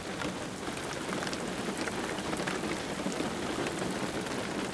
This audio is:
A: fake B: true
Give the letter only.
B